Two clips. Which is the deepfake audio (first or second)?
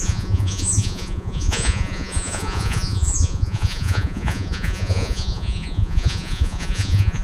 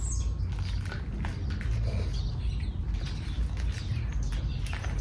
first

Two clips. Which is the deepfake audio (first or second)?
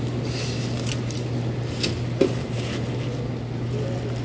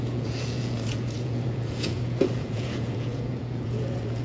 second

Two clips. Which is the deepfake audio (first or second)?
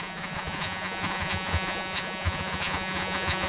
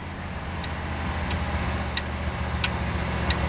first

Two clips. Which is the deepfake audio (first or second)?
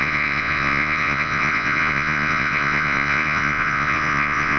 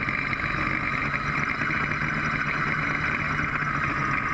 first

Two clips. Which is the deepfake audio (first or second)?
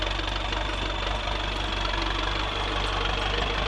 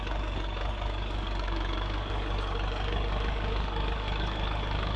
second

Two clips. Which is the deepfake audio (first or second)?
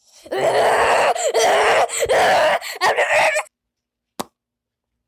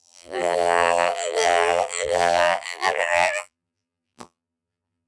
second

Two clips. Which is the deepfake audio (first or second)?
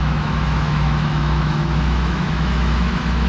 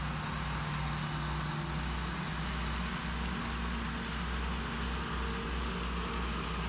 first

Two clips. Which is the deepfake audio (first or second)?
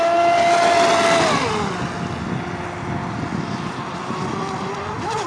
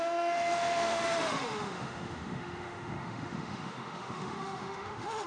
second